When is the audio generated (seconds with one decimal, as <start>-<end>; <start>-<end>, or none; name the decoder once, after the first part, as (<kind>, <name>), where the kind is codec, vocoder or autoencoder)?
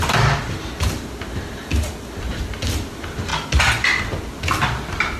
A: none